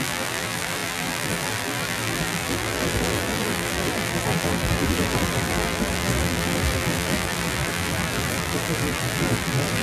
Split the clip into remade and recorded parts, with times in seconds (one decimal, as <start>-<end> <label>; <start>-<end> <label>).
0.0-9.8 remade